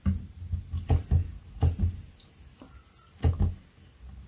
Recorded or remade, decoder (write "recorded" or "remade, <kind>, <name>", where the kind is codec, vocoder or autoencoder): recorded